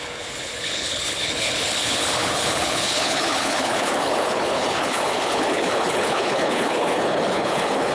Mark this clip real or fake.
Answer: fake